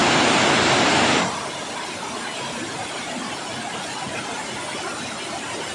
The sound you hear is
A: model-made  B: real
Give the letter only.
B